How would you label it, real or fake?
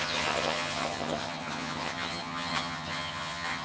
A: fake